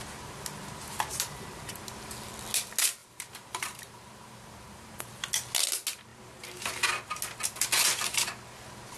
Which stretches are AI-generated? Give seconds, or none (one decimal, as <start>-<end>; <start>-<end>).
1.1-1.6; 3.0-5.0

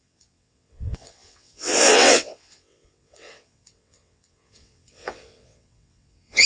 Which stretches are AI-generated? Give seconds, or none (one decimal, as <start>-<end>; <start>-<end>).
0.0-6.5

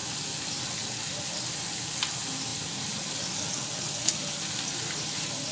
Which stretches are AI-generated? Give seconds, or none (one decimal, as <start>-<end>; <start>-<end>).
none

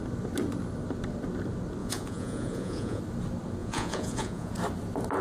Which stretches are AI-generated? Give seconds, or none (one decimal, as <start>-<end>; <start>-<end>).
1.8-3.0; 3.6-4.5

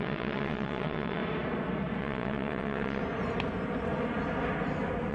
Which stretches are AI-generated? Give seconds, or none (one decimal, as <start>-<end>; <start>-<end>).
0.0-1.2; 2.0-3.0

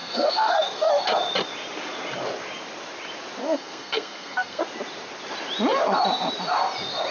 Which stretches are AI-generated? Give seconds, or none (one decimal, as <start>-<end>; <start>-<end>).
0.0-0.9; 3.4-4.6

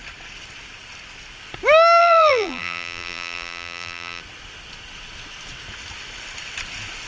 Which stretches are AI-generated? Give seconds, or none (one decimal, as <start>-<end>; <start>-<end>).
2.0-4.2

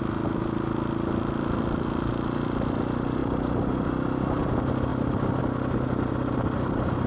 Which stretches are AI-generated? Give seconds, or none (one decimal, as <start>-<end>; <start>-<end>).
3.2-3.9; 4.9-5.4